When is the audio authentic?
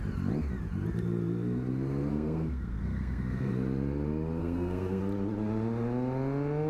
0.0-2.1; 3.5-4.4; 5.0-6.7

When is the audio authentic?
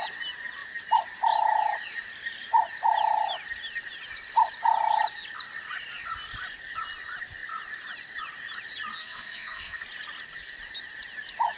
0.0-9.0; 9.8-11.6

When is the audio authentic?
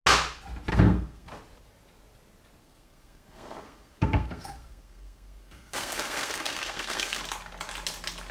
0.0-0.7; 1.3-2.6; 7.2-8.3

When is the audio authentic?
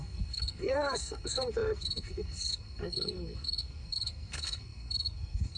none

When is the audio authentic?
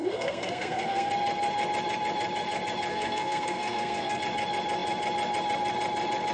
1.1-2.9; 4.2-6.3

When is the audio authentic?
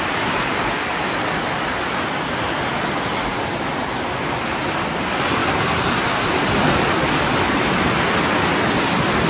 0.0-9.3